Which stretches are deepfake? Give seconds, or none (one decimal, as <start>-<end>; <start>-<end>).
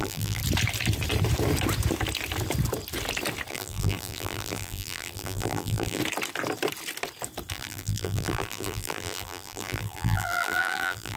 0.0-0.4; 3.5-6.0; 7.5-11.2